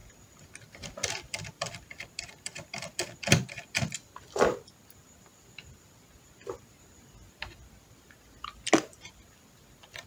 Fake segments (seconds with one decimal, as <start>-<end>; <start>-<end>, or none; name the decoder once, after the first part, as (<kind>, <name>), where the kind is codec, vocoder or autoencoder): none